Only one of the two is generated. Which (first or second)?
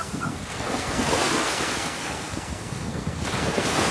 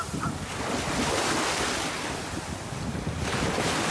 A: first